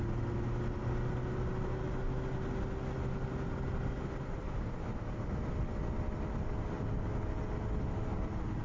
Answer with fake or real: real